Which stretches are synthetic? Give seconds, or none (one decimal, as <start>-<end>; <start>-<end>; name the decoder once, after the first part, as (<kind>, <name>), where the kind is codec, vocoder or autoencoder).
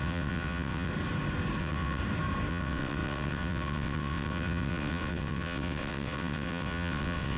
0.0-0.9 (vocoder, WaveNeXt); 1.6-2.0; 2.5-7.4